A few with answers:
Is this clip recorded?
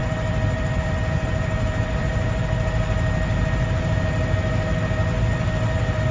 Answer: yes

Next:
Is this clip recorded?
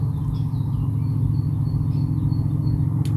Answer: yes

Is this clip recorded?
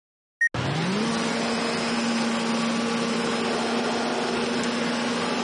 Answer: yes